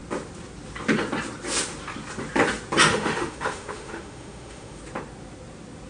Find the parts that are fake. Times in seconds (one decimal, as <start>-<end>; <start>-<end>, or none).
2.9-4.8